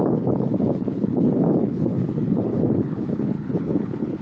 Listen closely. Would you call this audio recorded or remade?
remade